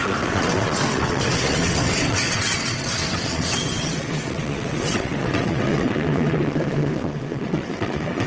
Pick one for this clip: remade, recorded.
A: remade